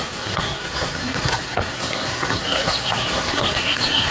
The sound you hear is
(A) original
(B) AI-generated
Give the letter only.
B